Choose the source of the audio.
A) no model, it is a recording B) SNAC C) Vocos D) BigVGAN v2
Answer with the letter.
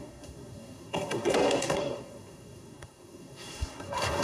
B